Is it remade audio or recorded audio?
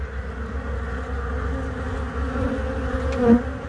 recorded